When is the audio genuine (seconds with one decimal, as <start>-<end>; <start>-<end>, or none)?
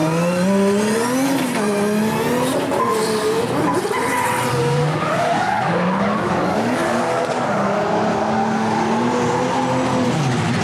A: 0.0-4.5; 8.8-10.6